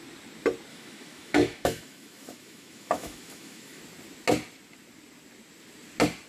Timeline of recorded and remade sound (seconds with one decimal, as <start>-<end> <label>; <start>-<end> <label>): 0.0-0.7 recorded; 0.7-3.8 remade; 3.8-6.3 recorded